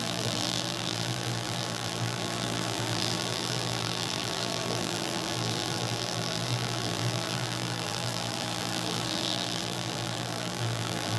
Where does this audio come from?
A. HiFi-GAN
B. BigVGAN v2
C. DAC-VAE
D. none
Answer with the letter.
B